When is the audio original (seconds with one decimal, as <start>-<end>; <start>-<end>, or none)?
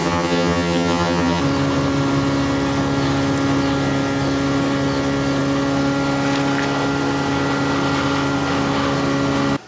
1.4-9.7